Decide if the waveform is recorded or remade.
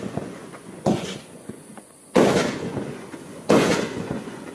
remade